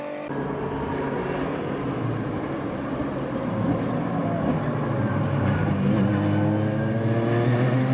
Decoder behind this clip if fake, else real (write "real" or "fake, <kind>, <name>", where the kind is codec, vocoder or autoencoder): real